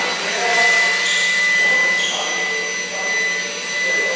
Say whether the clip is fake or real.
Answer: real